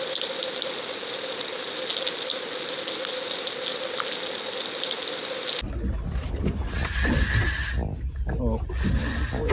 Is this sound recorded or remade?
recorded